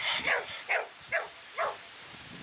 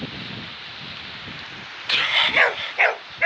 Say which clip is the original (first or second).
second